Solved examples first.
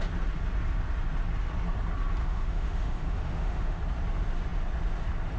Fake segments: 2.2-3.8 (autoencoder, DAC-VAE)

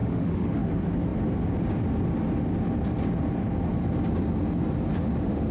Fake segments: 0.0-0.7 (autoencoder, DAC-VAE)

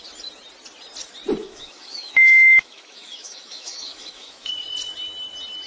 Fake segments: 1.4-4.5 (autoencoder, DAC-VAE)

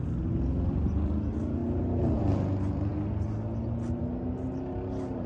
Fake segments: none

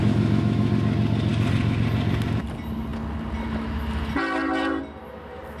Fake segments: 0.0-0.7 (autoencoder, DAC-VAE)

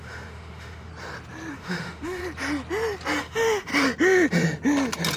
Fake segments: 0.0-0.9 (autoencoder, DAC-VAE); 1.5-2.2; 3.2-3.7

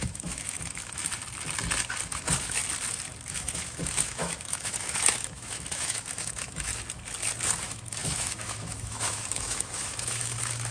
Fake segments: 0.0-1.0 (autoencoder, DAC-VAE); 2.1-2.6; 3.3-6.7; 7.6-10.7